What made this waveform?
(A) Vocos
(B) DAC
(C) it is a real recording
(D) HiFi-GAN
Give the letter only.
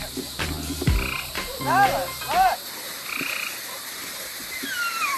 C